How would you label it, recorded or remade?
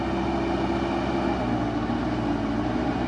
recorded